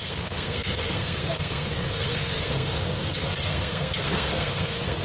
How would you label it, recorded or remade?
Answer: remade